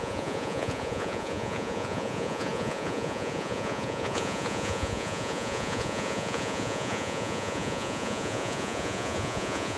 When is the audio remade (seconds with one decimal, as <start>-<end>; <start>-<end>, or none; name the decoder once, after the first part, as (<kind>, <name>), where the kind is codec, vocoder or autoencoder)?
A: 0.0-9.8 (vocoder, Vocos)